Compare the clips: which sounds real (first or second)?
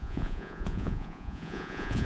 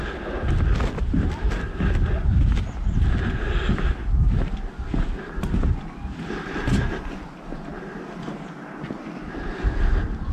second